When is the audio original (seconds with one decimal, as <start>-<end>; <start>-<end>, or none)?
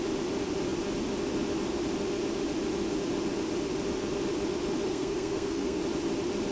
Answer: 0.0-4.9; 5.8-6.5